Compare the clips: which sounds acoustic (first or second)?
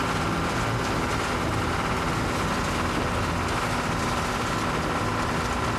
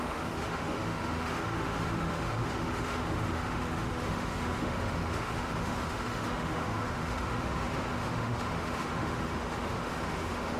first